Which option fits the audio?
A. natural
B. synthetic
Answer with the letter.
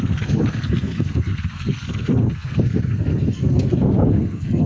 B